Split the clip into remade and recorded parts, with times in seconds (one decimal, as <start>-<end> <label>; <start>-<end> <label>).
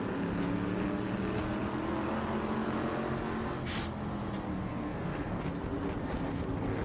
0.0-4.5 recorded; 4.5-5.3 remade; 5.3-6.8 recorded